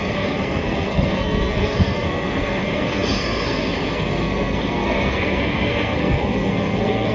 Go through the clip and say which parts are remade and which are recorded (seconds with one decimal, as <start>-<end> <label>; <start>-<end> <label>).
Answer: 0.0-7.1 remade